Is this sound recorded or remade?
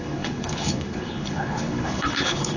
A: remade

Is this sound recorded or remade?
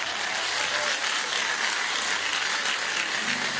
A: recorded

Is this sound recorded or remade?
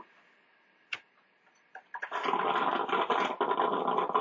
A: recorded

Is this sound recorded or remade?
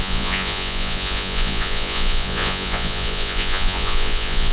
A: remade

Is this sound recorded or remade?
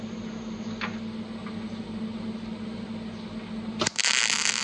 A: recorded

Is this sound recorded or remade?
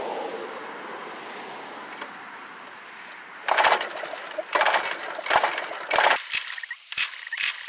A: recorded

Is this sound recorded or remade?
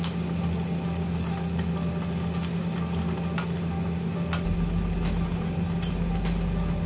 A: recorded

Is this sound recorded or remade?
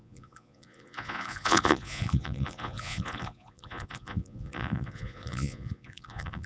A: remade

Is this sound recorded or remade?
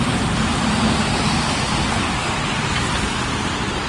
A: recorded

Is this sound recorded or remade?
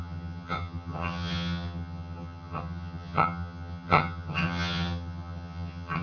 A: remade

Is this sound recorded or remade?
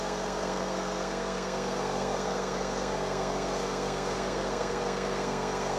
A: remade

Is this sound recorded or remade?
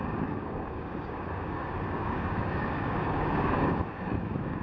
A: remade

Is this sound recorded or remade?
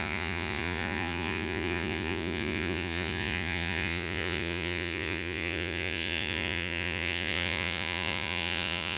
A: remade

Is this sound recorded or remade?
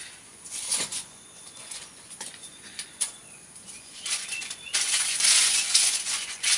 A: remade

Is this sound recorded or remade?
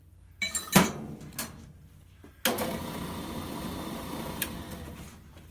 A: recorded